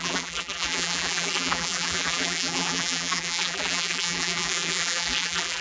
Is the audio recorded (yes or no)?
no